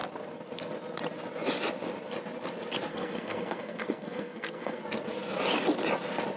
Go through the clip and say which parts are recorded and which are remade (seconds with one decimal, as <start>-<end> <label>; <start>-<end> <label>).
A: 0.0-2.9 recorded; 2.9-4.8 remade; 4.8-6.4 recorded